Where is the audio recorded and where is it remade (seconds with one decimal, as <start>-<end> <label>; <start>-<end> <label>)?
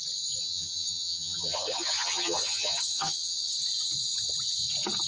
0.0-0.4 recorded; 0.4-3.5 remade; 3.5-5.1 recorded